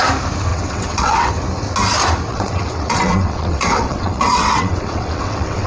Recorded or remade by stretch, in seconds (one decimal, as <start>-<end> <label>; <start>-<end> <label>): 0.0-0.5 recorded; 0.5-1.3 remade; 1.3-2.3 recorded; 2.3-5.7 remade